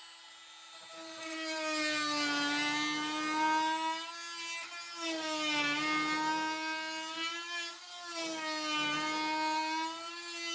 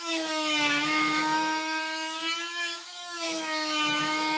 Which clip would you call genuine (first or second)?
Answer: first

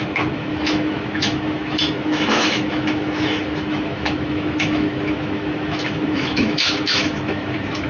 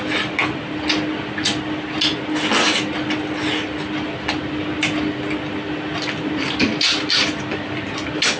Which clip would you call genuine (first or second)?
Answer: second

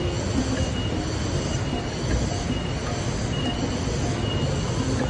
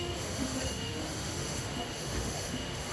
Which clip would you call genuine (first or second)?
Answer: first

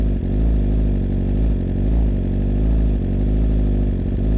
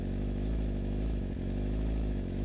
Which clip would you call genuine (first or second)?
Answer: first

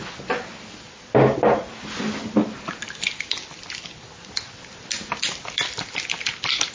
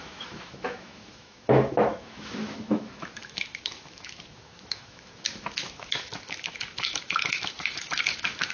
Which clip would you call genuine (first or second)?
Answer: first